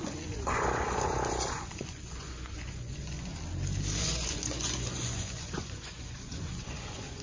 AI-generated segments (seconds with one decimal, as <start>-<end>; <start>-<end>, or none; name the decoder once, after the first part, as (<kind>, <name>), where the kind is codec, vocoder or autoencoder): 0.0-3.3 (vocoder, Vocos); 4.0-7.2